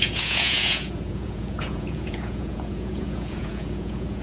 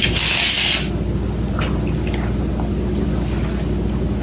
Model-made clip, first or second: first